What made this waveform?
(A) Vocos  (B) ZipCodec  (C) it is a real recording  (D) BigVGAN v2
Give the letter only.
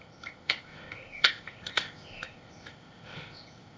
B